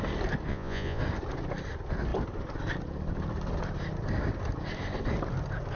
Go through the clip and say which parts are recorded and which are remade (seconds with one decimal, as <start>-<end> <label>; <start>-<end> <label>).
0.0-0.5 recorded; 0.5-1.0 remade; 1.0-5.8 recorded